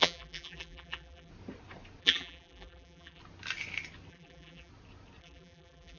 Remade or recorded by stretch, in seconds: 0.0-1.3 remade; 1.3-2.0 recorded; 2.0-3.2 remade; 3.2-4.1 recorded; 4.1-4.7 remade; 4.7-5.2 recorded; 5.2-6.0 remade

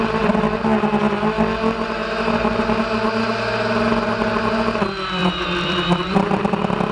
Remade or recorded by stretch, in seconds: 0.0-5.2 recorded; 5.2-6.9 remade

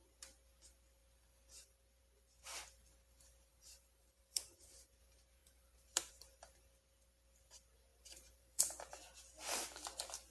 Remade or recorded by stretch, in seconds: 0.0-3.5 recorded; 3.5-4.7 remade; 4.7-5.4 recorded; 5.4-6.1 remade; 6.1-7.9 recorded; 7.9-8.6 remade; 8.6-10.3 recorded

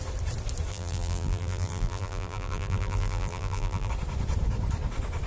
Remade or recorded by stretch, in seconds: 0.0-0.7 recorded; 0.7-3.9 remade; 3.9-5.3 recorded

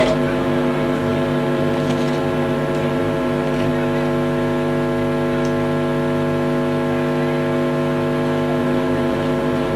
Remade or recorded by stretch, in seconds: 0.0-3.7 remade; 3.7-8.6 recorded; 8.6-9.8 remade

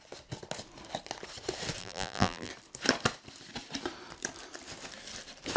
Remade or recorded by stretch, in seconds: 0.0-1.8 recorded; 1.8-2.5 remade; 2.5-5.6 recorded